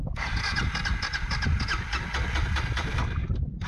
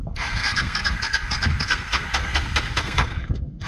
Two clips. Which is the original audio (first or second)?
first